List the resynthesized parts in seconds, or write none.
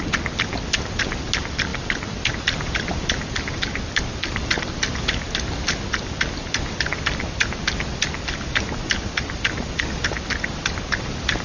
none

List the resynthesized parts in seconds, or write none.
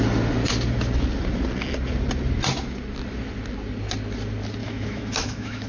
4.6-5.7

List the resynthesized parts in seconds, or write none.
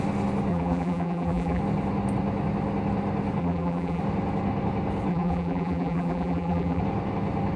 0.5-1.6; 3.4-4.0; 5.1-6.8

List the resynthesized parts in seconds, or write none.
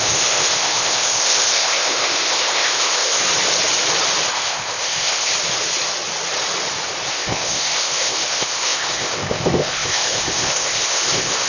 0.0-3.2; 4.3-5.3; 7.1-11.5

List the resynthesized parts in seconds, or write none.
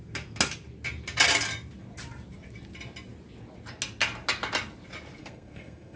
5.2-6.0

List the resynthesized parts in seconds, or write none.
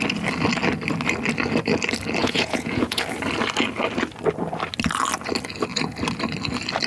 2.2-3.0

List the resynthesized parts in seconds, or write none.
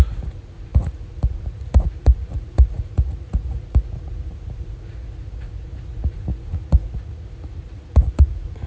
0.0-8.7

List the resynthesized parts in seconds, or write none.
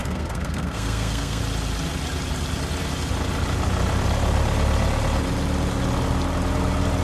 0.0-1.4